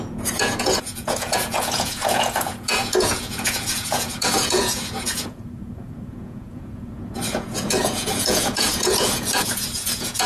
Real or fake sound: fake